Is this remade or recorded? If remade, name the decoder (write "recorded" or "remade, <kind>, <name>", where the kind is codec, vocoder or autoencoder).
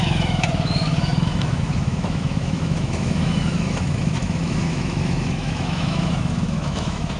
remade, autoencoder, DAC-VAE